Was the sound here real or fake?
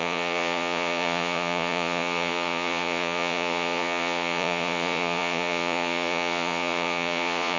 fake